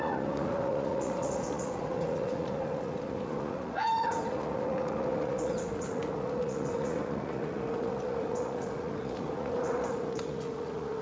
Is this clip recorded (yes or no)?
no